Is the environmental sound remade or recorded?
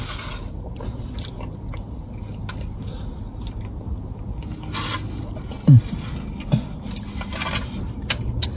recorded